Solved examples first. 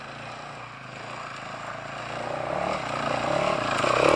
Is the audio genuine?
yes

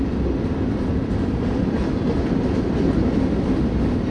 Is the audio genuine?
yes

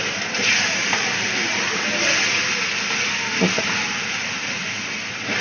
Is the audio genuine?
yes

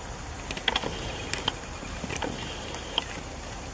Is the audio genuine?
yes